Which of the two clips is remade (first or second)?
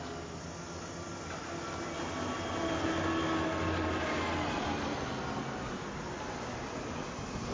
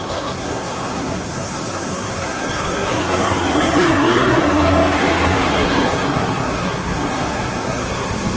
second